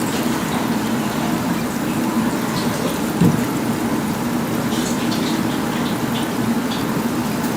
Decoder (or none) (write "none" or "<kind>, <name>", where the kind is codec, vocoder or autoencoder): none